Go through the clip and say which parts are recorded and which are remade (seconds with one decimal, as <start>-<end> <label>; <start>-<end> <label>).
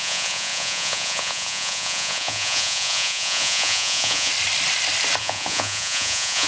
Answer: 0.0-4.3 remade; 4.3-5.2 recorded; 5.2-6.5 remade